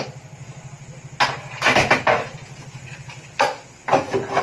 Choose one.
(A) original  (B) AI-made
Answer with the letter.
A